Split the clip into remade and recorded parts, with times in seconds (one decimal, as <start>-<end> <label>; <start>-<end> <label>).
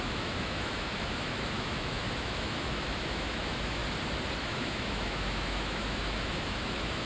0.0-3.8 remade; 3.8-4.4 recorded; 4.4-7.1 remade